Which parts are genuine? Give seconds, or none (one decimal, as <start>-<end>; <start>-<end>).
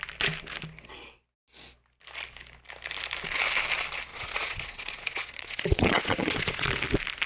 0.0-4.1; 6.7-7.3